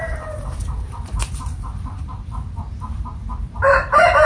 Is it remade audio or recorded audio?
remade